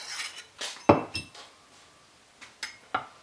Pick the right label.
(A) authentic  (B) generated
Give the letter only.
A